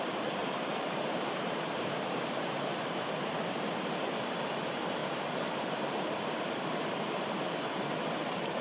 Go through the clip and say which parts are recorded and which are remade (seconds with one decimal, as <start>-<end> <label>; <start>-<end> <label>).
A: 0.0-0.4 recorded; 0.4-3.3 remade; 3.3-8.6 recorded